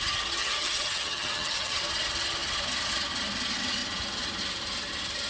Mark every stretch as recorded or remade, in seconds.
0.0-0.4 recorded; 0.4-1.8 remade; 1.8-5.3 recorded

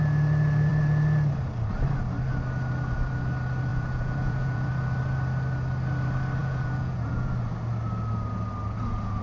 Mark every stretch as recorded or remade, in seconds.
0.0-3.7 recorded; 3.7-4.7 remade; 4.7-6.4 recorded; 6.4-7.3 remade; 7.3-9.2 recorded

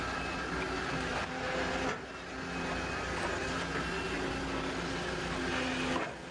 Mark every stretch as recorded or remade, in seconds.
0.0-6.3 recorded

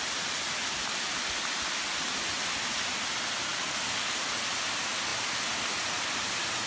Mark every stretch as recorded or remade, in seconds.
0.0-3.5 recorded; 3.5-4.2 remade; 4.2-6.7 recorded